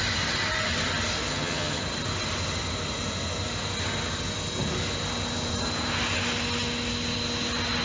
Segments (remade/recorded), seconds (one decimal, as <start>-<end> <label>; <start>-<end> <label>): 0.0-1.3 recorded; 1.3-1.8 remade; 1.8-7.8 recorded